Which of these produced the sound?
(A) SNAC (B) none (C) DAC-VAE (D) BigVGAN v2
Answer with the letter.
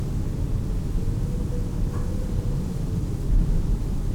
B